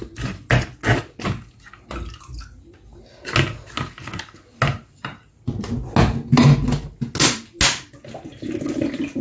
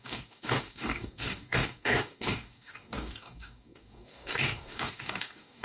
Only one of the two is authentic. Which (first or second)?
first